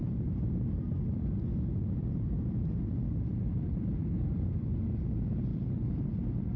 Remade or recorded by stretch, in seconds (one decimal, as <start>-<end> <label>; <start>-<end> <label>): 0.0-5.5 recorded; 5.5-6.1 remade; 6.1-6.6 recorded